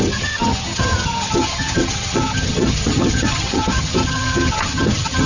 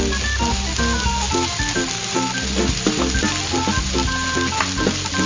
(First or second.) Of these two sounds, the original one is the second